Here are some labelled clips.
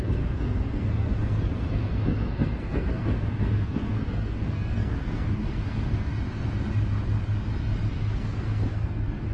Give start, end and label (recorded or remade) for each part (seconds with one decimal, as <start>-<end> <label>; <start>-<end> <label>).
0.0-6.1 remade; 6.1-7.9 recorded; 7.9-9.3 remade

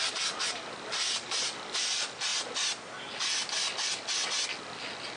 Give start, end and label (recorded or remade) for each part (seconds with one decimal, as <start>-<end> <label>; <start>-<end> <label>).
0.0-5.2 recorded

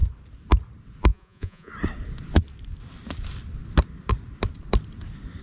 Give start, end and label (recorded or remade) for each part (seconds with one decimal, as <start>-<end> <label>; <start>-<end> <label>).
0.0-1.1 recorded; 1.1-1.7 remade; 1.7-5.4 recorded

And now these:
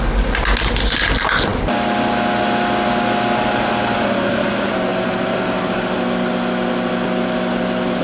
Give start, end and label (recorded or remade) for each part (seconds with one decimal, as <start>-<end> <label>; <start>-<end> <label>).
0.0-8.0 recorded

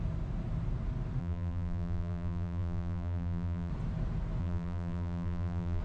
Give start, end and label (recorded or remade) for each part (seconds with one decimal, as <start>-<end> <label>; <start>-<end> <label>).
0.0-1.2 recorded; 1.2-3.7 remade; 3.7-4.4 recorded; 4.4-5.8 remade

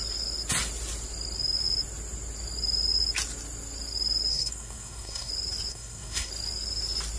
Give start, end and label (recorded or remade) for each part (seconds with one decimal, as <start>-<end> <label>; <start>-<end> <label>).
0.0-4.3 recorded; 4.3-5.3 remade; 5.3-5.7 recorded; 5.7-6.3 remade; 6.3-7.2 recorded